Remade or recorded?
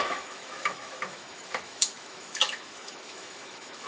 remade